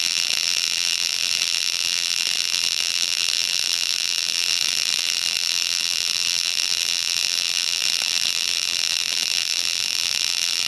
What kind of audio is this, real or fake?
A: fake